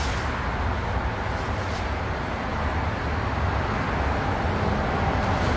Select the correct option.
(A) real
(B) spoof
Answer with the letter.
A